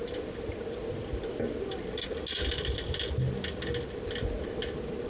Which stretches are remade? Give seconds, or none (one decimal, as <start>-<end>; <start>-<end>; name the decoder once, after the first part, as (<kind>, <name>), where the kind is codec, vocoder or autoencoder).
none